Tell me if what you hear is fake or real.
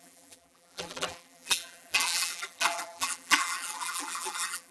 fake